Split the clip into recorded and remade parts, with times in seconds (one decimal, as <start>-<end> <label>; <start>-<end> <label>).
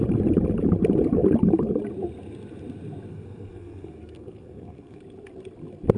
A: 0.0-3.1 recorded; 3.1-5.0 remade; 5.0-6.0 recorded